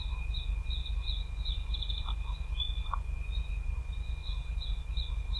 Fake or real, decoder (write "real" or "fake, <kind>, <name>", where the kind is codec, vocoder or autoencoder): fake, vocoder, Vocos